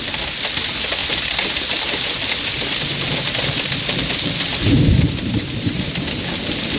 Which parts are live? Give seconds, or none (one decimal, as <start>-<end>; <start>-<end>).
0.0-1.0; 1.6-4.5; 5.9-6.8